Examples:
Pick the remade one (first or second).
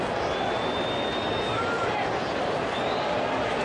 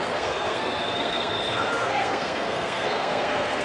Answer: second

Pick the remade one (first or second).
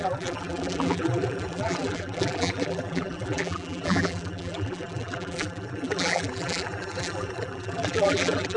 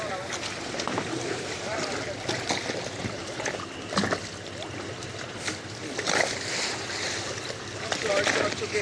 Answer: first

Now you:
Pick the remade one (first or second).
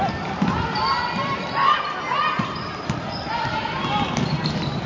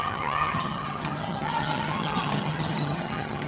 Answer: second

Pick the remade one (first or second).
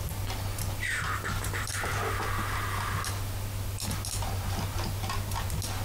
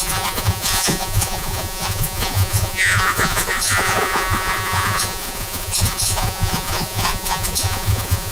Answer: second